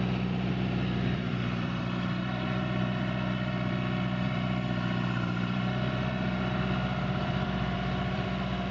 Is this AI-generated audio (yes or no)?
yes